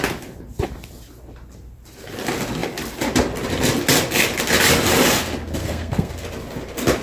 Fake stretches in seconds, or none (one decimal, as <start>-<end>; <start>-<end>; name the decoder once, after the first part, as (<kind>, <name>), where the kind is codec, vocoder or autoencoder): 5.6-6.1 (codec, SNAC)